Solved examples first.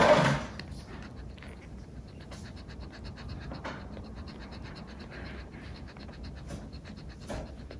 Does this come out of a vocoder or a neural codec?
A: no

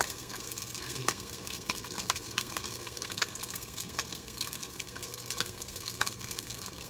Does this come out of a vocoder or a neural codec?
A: yes